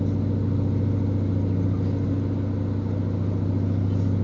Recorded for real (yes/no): yes